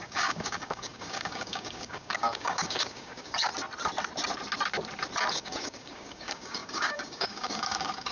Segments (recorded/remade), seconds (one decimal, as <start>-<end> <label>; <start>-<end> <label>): 0.0-3.5 remade; 3.5-5.3 recorded; 5.3-8.1 remade